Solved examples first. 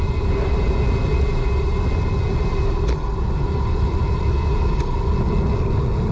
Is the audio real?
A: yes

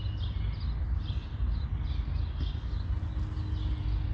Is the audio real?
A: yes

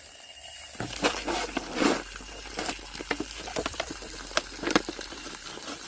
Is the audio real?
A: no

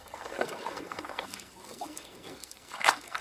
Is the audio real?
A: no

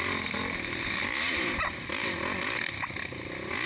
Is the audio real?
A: yes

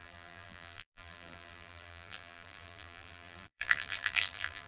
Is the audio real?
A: no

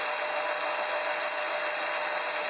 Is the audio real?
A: yes